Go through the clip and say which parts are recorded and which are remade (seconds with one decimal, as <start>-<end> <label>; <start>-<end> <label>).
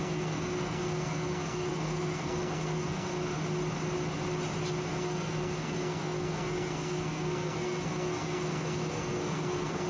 0.0-3.1 remade; 3.1-4.9 recorded; 4.9-9.9 remade